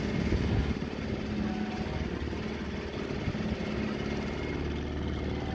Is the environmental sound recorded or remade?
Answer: recorded